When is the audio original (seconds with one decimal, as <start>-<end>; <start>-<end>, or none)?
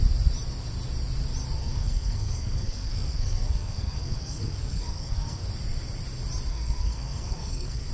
0.0-1.6; 5.5-6.5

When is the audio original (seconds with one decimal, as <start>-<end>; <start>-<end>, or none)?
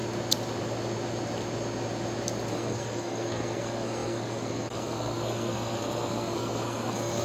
0.0-2.5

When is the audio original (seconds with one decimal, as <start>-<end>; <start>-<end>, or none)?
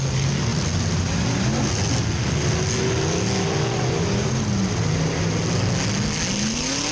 0.0-6.9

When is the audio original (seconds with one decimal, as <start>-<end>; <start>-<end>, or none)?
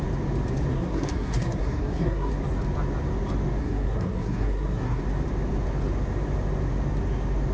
0.0-0.7; 2.3-3.6; 5.0-7.5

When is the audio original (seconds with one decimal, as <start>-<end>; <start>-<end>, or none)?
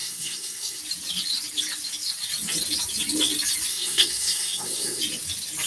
0.8-3.7; 5.0-5.7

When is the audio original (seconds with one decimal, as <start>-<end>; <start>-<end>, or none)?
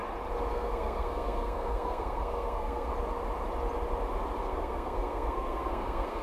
0.0-0.5; 2.9-4.4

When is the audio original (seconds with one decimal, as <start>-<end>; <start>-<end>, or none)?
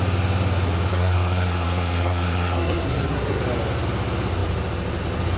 0.0-0.9; 3.4-5.4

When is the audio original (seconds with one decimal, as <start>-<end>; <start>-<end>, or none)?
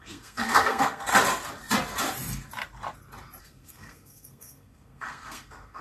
1.1-3.4